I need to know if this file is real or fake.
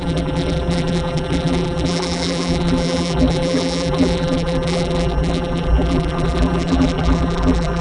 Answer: fake